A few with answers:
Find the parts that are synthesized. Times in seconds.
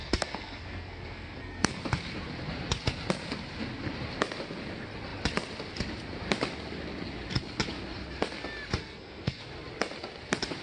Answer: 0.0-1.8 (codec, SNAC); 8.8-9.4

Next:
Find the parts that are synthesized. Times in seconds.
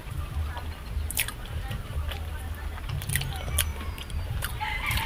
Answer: 0.0-3.1 (vocoder, BigVGAN v2); 3.7-5.1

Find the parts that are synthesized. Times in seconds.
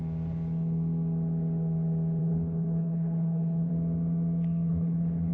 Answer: 2.2-3.7 (codec, HILCodec); 4.7-5.3